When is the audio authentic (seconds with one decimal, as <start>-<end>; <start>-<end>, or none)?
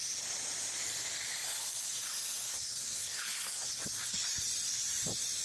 0.0-2.5; 3.7-5.4